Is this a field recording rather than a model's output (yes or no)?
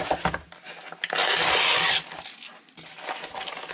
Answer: yes